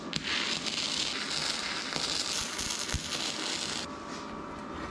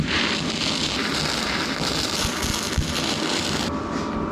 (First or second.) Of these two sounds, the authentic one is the first